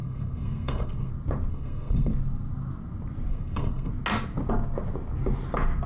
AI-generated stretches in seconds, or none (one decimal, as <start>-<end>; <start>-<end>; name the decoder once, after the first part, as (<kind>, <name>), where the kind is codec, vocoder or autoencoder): 0.0-1.1 (codec, SNAC); 1.5-2.1; 3.3-3.9